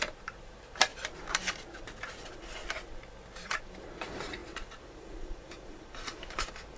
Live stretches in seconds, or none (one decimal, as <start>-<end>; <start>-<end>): 2.6-3.4